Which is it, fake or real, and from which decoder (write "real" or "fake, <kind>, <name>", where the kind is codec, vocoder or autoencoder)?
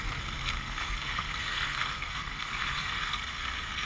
fake, codec, SNAC